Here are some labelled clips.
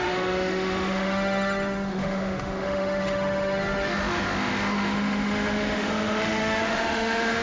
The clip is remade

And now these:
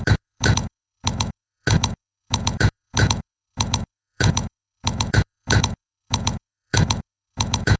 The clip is remade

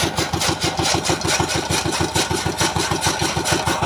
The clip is recorded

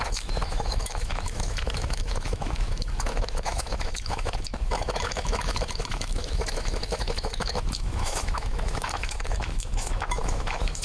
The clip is remade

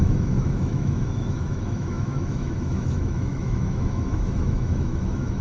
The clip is remade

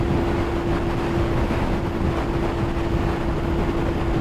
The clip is recorded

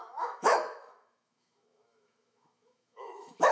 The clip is remade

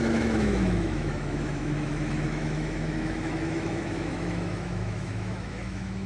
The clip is remade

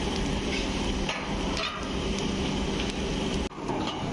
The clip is recorded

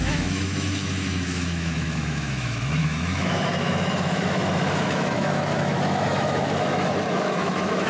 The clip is remade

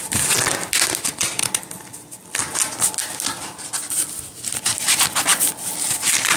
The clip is recorded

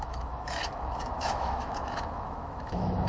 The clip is remade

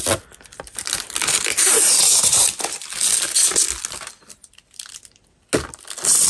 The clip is recorded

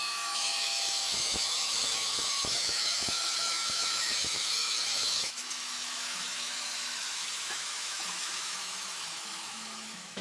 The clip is remade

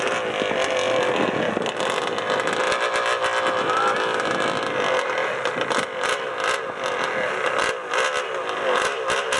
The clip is recorded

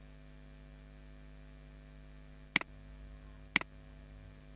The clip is recorded